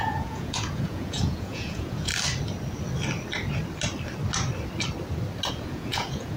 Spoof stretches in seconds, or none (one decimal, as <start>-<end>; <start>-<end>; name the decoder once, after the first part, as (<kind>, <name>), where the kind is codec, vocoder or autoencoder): 0.0-2.1 (vocoder, Vocos); 5.5-6.4